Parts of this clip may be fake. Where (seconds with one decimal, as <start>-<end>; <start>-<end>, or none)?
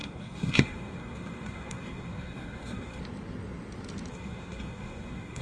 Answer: 0.0-3.0; 4.1-5.4